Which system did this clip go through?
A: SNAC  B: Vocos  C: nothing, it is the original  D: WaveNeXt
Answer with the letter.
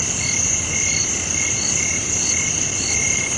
C